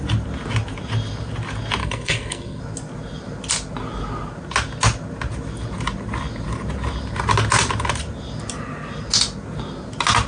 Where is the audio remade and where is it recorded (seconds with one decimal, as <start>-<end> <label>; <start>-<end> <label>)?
0.0-1.8 recorded; 1.8-2.6 remade; 2.6-10.3 recorded